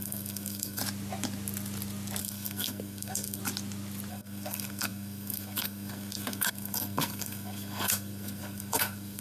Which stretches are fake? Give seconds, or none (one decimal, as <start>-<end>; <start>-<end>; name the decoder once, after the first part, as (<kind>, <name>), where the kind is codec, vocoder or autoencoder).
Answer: 0.0-0.8 (codec, SNAC); 2.2-3.4; 4.1-9.2